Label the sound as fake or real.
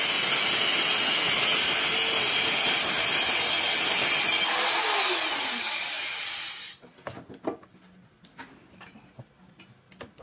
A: real